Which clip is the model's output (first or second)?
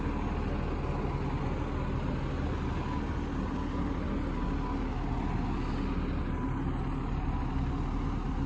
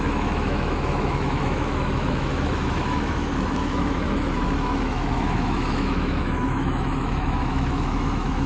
second